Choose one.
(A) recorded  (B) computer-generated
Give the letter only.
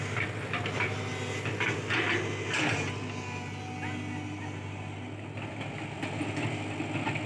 A